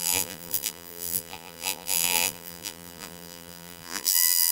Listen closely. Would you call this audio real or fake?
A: fake